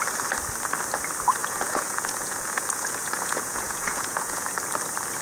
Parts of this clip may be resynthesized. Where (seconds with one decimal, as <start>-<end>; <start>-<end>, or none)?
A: 1.4-4.5